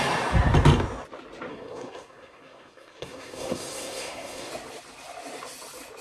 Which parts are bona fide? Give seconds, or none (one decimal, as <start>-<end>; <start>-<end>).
0.0-1.5; 4.5-6.0